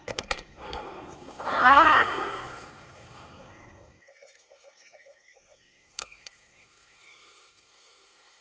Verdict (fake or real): fake